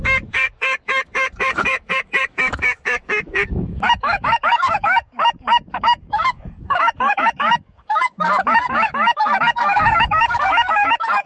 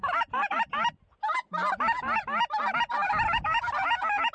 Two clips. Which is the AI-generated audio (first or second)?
first